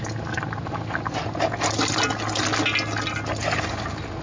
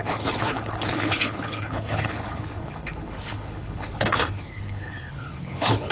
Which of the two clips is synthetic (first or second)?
second